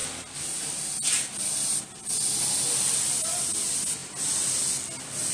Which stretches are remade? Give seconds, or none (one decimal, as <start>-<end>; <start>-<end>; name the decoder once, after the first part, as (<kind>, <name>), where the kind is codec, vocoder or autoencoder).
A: none